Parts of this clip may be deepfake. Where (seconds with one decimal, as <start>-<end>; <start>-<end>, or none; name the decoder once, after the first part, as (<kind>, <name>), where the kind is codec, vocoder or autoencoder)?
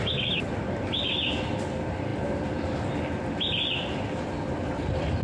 none